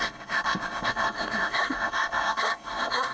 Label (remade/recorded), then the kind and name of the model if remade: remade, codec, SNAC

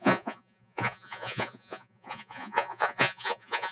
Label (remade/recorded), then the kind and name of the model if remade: remade, vocoder, Vocos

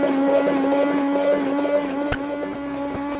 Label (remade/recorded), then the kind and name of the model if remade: recorded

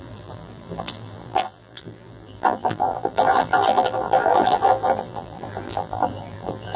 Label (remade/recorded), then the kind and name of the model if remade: remade, vocoder, BigVGAN v2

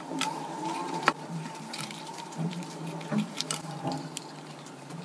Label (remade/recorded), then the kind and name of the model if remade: remade, vocoder, BigVGAN v2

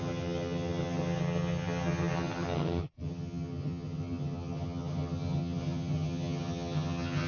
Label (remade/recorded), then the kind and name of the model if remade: remade, vocoder, HiFi-GAN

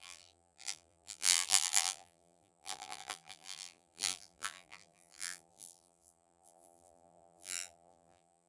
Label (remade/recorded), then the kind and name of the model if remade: remade, vocoder, BigVGAN v2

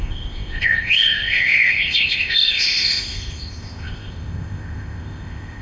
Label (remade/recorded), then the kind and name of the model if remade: remade, codec, ZipCodec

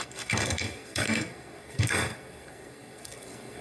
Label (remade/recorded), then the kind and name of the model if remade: remade, codec, SNAC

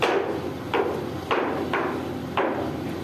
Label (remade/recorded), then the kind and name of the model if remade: recorded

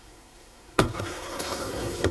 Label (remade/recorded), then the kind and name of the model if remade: remade, codec, SNAC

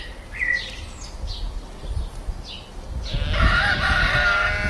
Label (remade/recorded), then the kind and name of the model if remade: recorded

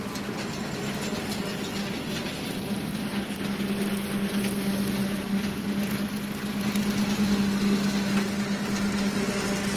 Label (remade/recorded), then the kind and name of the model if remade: recorded